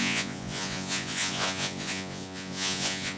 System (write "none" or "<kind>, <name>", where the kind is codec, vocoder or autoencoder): vocoder, Vocos